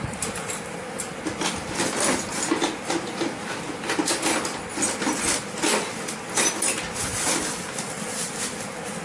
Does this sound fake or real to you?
real